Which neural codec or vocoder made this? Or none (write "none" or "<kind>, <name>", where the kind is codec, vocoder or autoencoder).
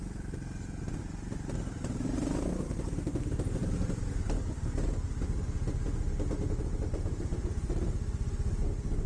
none